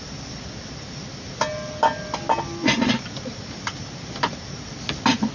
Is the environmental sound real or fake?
real